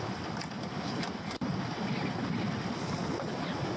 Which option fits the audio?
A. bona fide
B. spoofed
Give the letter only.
A